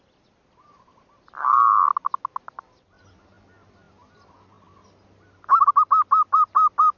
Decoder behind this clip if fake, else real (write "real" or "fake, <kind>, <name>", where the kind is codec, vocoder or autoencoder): real